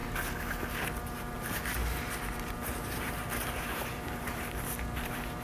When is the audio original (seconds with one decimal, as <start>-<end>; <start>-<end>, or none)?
0.0-1.0